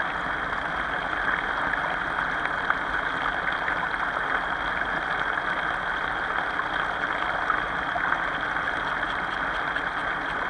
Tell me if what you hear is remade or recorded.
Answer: recorded